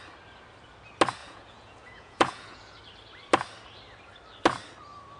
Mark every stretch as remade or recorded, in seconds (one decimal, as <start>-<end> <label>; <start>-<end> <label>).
0.0-1.2 recorded; 1.2-2.8 remade; 2.8-5.2 recorded